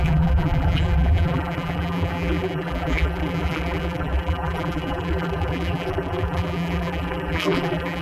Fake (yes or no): yes